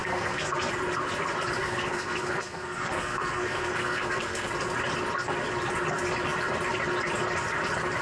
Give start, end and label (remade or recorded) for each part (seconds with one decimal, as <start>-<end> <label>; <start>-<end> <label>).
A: 0.0-0.7 remade; 0.7-1.6 recorded; 1.6-4.5 remade; 4.5-8.0 recorded